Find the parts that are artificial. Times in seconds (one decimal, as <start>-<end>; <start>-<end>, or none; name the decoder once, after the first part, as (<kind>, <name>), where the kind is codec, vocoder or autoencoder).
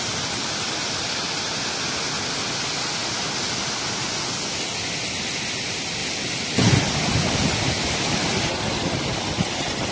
none